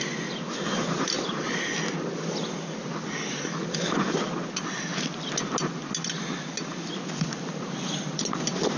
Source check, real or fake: real